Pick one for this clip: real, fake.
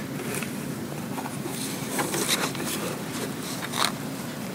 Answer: fake